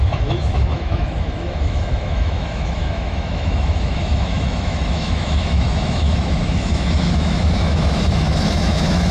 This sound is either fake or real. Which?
fake